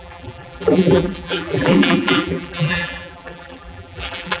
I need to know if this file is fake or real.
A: fake